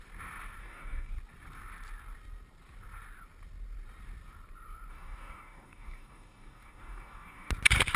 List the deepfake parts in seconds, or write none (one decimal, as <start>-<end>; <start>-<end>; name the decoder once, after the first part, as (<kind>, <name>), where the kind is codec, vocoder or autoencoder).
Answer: 0.6-1.1 (codec, DAC); 4.9-7.5